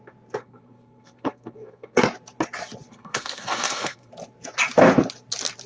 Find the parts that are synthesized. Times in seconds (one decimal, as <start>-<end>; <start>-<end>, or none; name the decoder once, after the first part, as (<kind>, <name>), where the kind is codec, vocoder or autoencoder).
0.4-2.0 (codec, SNAC); 2.9-4.1